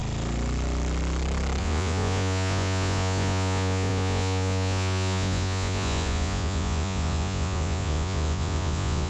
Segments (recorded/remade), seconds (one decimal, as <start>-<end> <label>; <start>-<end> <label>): 0.0-1.6 recorded; 1.6-9.1 remade